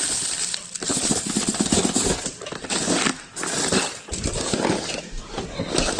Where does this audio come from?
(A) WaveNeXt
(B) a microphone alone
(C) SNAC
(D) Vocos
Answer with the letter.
B